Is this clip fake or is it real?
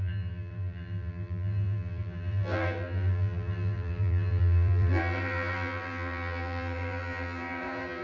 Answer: fake